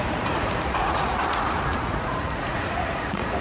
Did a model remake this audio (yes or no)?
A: yes